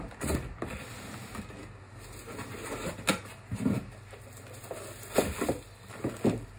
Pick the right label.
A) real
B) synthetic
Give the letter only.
A